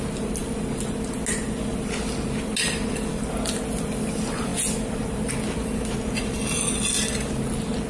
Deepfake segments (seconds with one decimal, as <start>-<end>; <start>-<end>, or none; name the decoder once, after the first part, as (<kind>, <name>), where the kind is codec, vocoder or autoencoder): none